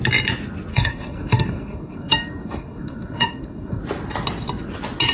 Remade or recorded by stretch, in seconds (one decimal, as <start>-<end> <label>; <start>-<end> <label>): 0.0-0.7 recorded; 0.7-3.8 remade; 3.8-5.1 recorded